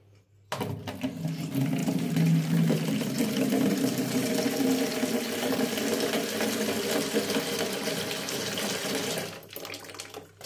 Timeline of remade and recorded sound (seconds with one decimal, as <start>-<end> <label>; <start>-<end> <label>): 0.0-1.8 recorded; 1.8-4.3 remade; 4.3-10.5 recorded